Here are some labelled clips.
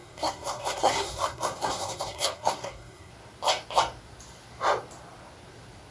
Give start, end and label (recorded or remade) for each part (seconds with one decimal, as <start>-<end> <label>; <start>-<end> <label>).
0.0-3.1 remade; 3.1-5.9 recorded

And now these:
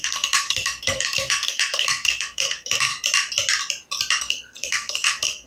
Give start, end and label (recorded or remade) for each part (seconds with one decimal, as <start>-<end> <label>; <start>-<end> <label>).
0.0-2.9 remade; 2.9-4.2 recorded; 4.2-5.5 remade

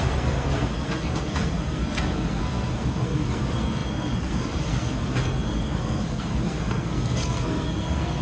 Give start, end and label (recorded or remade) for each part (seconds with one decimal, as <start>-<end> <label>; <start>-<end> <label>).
0.0-8.2 remade

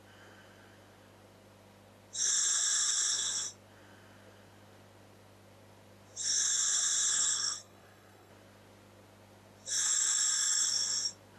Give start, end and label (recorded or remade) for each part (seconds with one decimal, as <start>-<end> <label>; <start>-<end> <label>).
0.0-7.3 recorded; 7.3-8.3 remade; 8.3-11.4 recorded

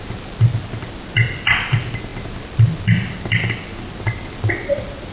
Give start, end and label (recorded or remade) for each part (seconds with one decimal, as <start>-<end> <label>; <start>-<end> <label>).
0.0-5.1 recorded

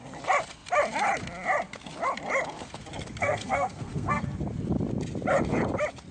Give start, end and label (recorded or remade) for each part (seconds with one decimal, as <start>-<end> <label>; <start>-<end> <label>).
0.0-3.2 recorded; 3.2-4.2 remade; 4.2-6.1 recorded